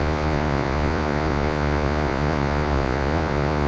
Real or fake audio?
fake